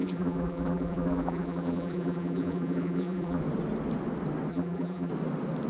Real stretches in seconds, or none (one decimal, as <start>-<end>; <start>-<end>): 3.4-4.5; 5.1-5.7